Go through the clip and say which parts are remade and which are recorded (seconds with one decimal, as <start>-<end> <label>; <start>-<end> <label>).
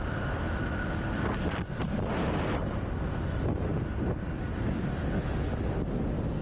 0.0-6.4 recorded